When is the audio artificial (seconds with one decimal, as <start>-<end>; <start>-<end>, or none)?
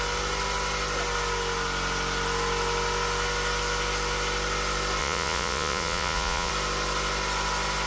5.0-6.5